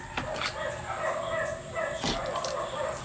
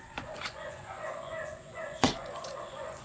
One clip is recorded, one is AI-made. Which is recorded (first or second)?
first